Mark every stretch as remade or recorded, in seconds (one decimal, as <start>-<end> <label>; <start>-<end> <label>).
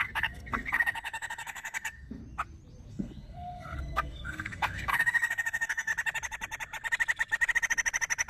0.0-2.2 remade; 2.2-2.9 recorded; 2.9-5.9 remade; 5.9-8.3 recorded